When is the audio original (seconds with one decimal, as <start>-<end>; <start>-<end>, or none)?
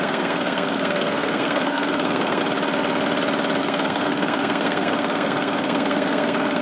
2.4-3.6